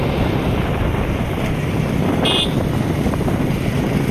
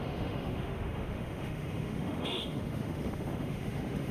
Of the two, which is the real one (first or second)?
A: first